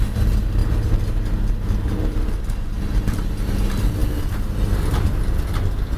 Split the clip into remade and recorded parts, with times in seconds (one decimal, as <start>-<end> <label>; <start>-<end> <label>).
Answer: 0.0-6.0 recorded